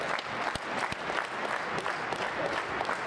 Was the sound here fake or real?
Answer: real